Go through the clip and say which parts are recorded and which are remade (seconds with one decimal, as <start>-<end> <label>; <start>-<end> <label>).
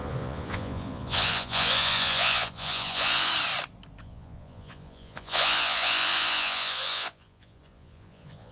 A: 0.0-3.3 remade; 3.3-4.0 recorded; 4.0-8.5 remade